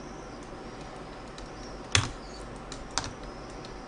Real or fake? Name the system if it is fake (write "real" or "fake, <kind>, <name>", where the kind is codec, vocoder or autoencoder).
real